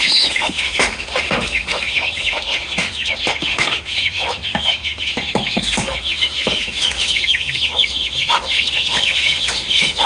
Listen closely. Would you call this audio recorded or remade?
remade